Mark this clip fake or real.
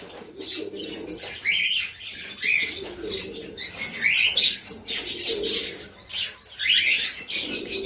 real